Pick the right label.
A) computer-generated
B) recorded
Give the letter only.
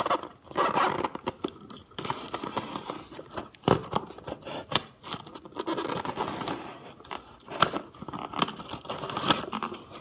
B